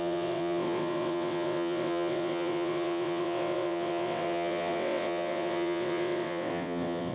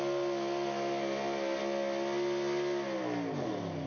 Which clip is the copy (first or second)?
first